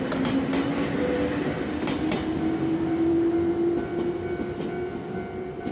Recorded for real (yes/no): yes